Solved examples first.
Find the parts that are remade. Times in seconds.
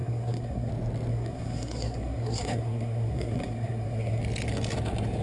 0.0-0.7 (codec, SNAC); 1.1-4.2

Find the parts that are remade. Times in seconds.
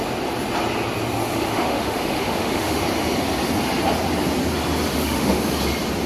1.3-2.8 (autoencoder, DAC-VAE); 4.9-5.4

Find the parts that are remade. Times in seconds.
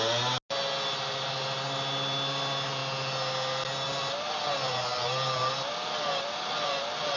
none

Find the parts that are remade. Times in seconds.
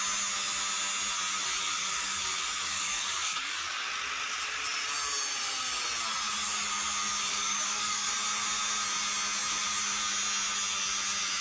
1.6-3.9 (codec, DAC); 7.3-8.1